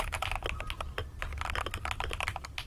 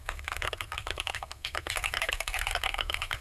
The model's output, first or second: second